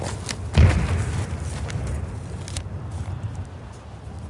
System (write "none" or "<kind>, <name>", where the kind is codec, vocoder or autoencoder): none